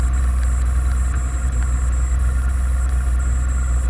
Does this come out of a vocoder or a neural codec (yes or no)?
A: no